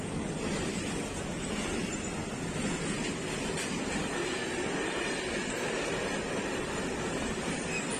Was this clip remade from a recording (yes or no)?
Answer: no